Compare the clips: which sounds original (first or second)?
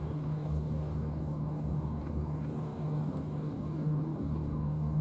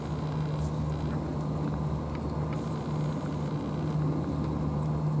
second